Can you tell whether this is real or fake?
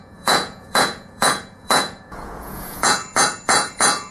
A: fake